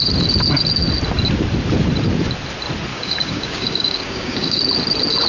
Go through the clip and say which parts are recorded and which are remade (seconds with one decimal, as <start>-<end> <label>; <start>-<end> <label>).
0.0-2.9 recorded; 2.9-4.6 remade; 4.6-5.3 recorded